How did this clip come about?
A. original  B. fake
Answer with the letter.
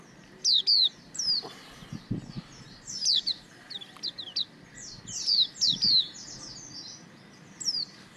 A